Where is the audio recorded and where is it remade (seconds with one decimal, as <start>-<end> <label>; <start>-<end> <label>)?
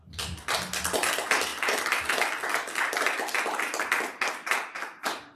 0.0-5.4 recorded